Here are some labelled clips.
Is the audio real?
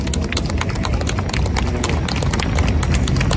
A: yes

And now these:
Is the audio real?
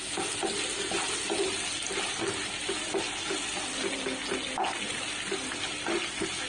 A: yes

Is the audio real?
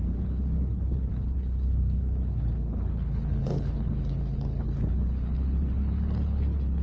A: no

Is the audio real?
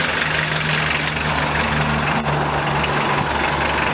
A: yes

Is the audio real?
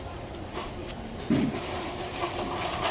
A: yes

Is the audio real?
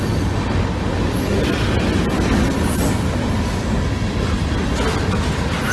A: yes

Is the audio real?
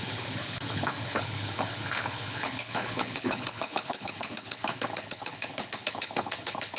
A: no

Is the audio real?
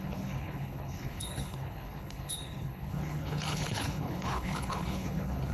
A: no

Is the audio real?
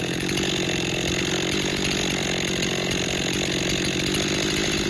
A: yes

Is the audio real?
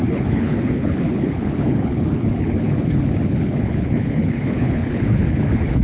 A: no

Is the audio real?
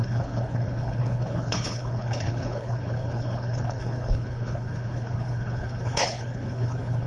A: no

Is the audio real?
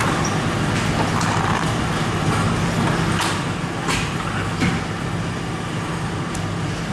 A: yes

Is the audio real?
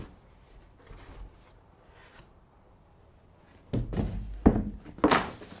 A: yes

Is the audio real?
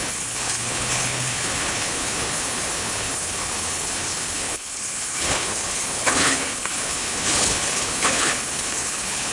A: no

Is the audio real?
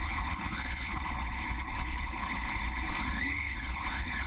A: no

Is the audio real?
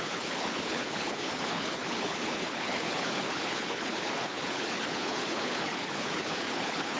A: no